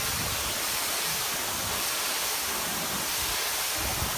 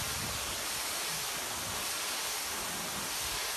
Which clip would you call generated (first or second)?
first